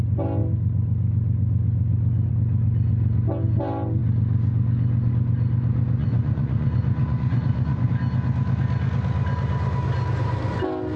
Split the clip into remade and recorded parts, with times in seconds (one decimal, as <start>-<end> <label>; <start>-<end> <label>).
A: 0.0-6.0 recorded; 6.0-7.9 remade; 7.9-11.0 recorded